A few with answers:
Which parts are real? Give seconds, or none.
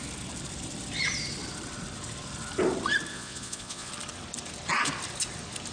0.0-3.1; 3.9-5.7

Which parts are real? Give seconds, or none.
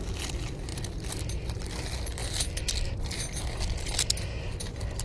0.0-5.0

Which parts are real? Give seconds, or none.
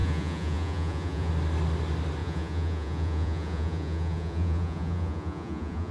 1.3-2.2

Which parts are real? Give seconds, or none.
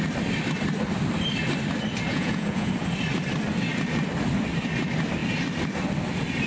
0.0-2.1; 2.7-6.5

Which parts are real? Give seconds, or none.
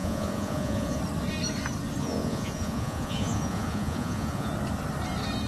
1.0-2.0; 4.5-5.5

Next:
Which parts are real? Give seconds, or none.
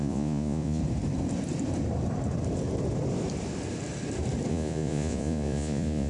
0.8-4.5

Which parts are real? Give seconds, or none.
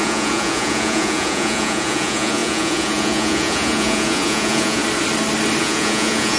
4.8-5.6